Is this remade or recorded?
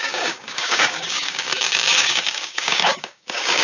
remade